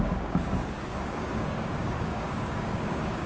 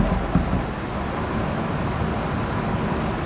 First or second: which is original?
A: second